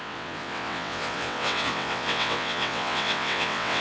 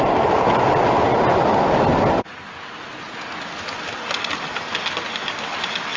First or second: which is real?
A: second